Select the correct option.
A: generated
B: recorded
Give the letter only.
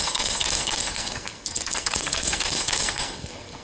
A